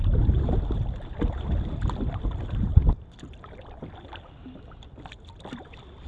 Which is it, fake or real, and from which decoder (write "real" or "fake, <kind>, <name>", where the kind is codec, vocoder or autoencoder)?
real